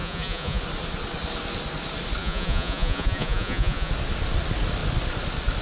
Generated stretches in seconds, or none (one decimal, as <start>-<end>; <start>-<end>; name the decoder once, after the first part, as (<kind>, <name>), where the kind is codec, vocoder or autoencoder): 0.0-0.6 (vocoder, Vocos); 2.2-3.9